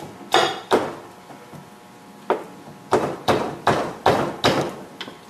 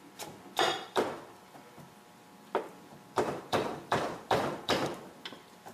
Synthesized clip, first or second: second